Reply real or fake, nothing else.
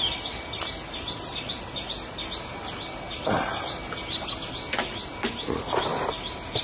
real